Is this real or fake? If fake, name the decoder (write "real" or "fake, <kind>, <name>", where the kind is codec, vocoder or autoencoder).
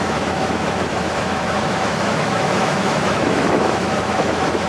fake, autoencoder, DAC-VAE